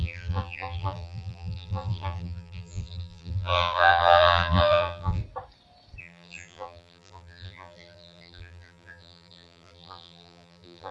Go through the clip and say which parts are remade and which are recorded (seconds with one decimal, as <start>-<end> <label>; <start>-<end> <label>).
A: 0.0-5.2 remade; 5.2-6.0 recorded; 6.0-10.9 remade